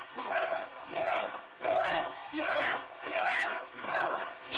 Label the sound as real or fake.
fake